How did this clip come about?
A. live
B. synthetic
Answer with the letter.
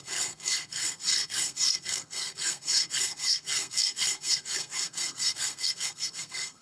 B